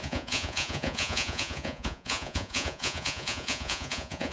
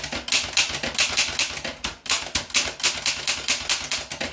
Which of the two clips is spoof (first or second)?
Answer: first